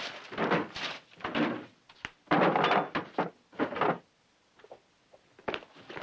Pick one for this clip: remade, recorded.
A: recorded